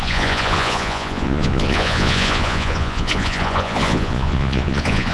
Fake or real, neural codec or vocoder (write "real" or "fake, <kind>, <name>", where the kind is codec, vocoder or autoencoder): fake, vocoder, Vocos